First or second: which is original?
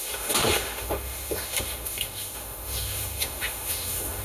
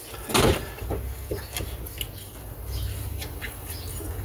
second